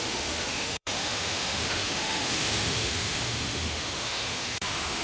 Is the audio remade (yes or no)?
yes